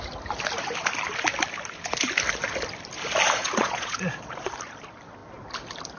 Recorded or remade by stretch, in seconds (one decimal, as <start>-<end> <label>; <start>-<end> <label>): 0.0-3.4 recorded; 3.4-4.5 remade; 4.5-6.0 recorded